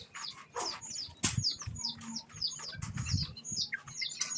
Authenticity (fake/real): real